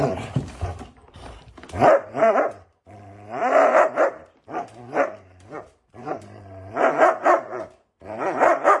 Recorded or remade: remade